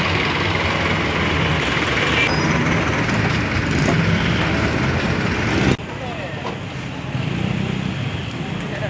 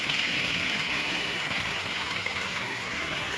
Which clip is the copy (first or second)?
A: second